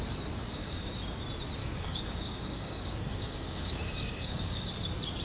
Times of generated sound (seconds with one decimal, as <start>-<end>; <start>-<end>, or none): 0.4-0.9; 1.6-4.7